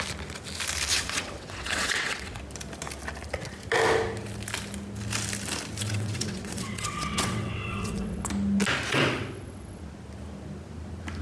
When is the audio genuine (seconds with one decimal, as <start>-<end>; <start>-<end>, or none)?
0.0-0.9; 2.4-5.8; 8.3-8.9; 9.8-11.2

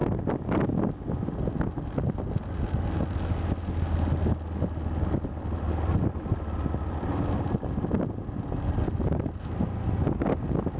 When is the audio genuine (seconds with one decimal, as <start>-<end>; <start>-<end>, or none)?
0.0-10.8

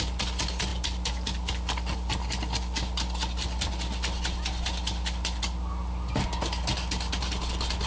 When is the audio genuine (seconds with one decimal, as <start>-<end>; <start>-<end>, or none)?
0.0-7.9

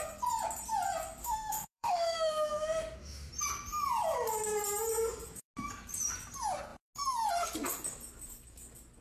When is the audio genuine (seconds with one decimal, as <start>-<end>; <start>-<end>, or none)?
0.0-1.2; 3.3-9.0

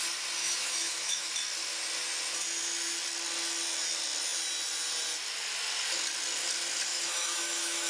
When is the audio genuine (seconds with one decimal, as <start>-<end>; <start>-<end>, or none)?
0.0-0.4; 1.3-6.9

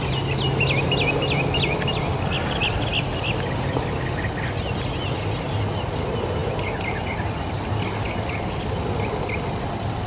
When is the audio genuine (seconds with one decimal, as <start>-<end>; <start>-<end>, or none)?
0.0-10.1

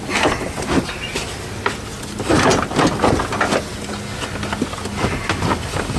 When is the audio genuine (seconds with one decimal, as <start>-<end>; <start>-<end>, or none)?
0.0-6.0

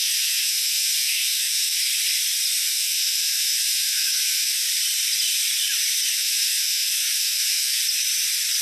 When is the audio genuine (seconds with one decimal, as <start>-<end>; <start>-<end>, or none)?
1.8-2.6; 4.6-6.1; 7.8-8.6